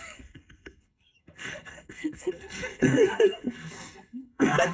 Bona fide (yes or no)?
no